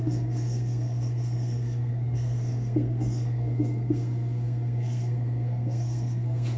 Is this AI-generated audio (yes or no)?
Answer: yes